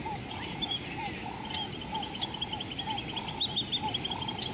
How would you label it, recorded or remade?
recorded